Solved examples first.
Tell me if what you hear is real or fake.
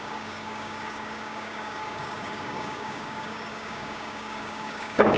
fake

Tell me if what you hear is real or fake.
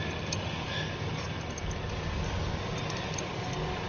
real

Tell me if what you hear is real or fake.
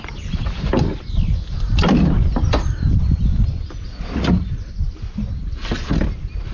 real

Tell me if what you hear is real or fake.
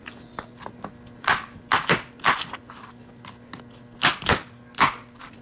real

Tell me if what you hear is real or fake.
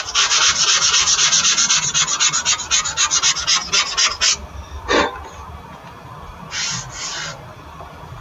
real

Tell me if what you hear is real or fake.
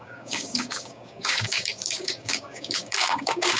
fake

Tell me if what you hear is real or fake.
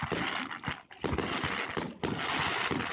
real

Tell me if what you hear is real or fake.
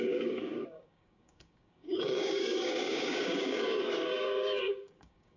fake